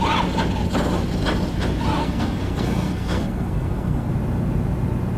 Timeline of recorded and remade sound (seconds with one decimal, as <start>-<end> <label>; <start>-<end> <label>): 0.0-2.0 recorded; 2.0-4.1 remade; 4.1-5.2 recorded

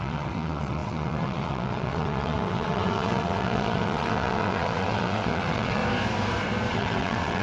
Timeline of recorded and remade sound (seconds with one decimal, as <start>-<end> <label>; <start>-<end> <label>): 0.0-5.8 remade; 5.8-6.7 recorded; 6.7-7.4 remade

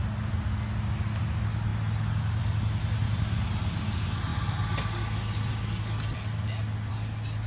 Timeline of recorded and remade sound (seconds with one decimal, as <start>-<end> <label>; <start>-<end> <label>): 0.0-7.5 recorded

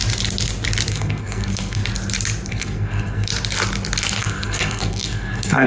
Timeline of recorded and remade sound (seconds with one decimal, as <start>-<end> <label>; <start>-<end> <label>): 0.0-0.9 recorded; 0.9-1.8 remade; 1.8-2.5 recorded; 2.5-3.3 remade; 3.3-4.2 recorded; 4.2-5.7 remade

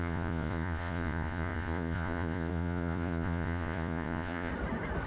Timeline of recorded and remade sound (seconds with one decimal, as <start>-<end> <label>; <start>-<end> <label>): 0.0-4.5 remade; 4.5-5.1 recorded